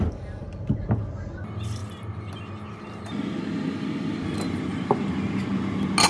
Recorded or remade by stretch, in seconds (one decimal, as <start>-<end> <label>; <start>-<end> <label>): 0.0-6.1 recorded